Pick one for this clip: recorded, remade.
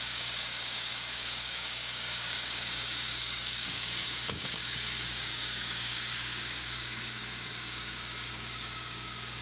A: remade